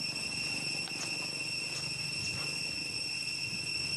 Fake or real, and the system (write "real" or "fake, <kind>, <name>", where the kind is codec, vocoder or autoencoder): real